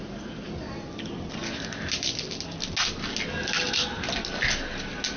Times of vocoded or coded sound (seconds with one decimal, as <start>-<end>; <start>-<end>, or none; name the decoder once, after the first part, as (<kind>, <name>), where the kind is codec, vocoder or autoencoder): none